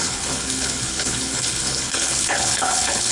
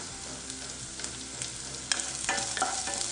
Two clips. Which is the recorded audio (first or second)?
second